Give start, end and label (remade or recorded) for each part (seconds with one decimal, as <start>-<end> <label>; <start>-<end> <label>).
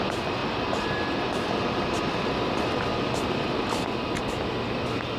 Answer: 0.0-5.2 recorded